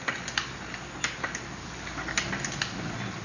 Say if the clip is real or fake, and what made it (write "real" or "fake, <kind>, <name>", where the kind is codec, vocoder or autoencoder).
real